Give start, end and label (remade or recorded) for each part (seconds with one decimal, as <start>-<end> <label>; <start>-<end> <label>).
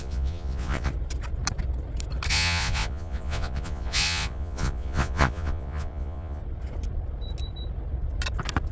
0.0-0.9 remade; 0.9-2.3 recorded; 2.3-6.4 remade; 6.4-8.7 recorded